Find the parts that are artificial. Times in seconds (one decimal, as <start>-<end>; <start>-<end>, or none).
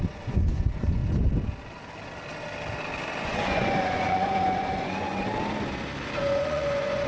0.0-1.0; 3.2-5.1; 6.2-7.1